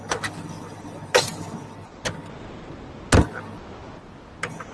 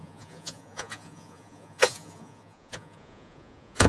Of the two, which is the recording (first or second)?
first